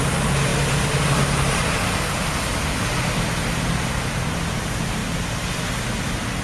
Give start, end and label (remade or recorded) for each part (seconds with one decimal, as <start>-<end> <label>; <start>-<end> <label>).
0.0-6.4 recorded